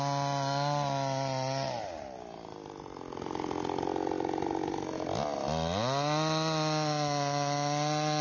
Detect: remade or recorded recorded